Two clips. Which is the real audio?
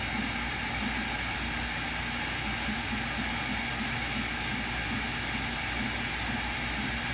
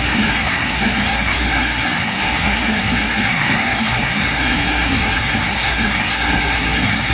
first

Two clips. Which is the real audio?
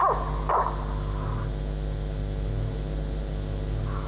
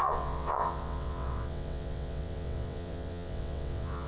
first